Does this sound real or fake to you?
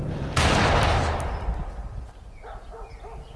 real